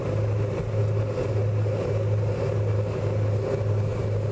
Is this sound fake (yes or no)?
no